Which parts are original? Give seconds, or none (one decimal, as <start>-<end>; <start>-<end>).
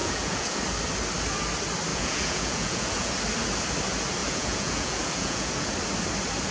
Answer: 0.6-1.9; 3.1-4.2; 5.7-6.5